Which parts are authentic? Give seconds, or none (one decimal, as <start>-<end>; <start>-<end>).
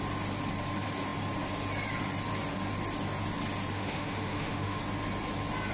0.0-3.7; 4.8-5.7